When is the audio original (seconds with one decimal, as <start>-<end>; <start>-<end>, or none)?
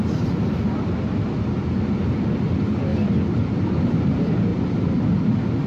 0.0-5.7